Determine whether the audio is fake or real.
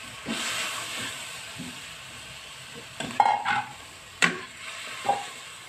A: fake